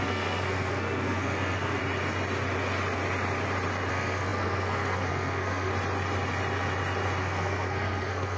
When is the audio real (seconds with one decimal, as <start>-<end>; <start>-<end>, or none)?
1.8-3.9; 5.7-7.2